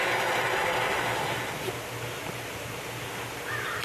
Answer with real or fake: real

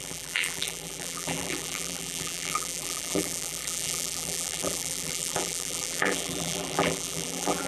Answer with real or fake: fake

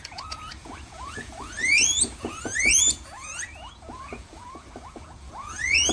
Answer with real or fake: fake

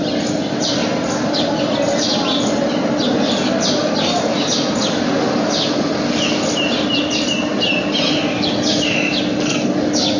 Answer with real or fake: real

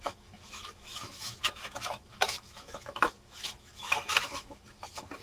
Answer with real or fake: fake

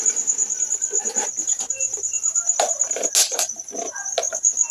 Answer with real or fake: real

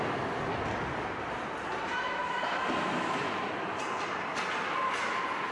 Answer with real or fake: real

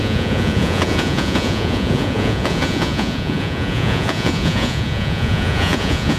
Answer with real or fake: fake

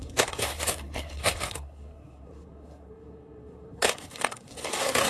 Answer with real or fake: fake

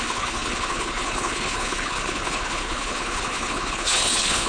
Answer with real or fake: fake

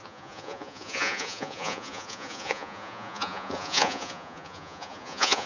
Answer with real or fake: fake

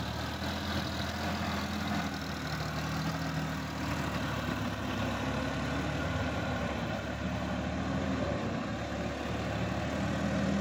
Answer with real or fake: real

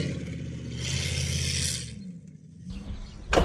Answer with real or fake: real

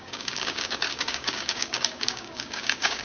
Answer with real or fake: fake